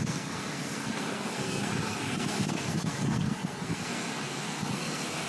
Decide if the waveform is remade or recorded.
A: remade